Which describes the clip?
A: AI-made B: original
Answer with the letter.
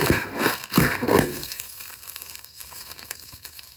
A